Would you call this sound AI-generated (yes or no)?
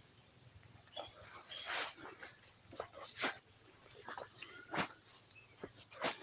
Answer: no